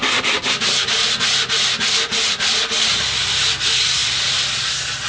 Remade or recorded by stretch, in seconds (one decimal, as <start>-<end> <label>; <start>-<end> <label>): 0.0-5.1 recorded